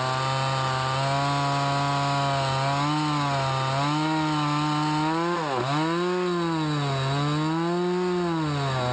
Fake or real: real